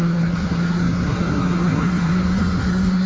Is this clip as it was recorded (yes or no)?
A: no